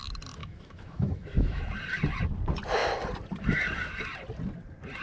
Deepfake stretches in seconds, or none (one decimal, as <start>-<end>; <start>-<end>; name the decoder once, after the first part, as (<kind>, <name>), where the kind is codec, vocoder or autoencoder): 0.4-1.7 (autoencoder, DAC-VAE)